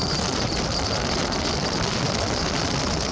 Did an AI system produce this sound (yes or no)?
no